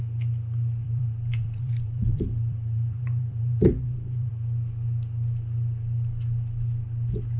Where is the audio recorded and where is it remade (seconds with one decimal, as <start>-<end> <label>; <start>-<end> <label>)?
0.0-0.8 recorded; 0.8-4.3 remade; 4.3-7.4 recorded